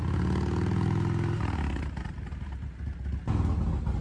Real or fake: real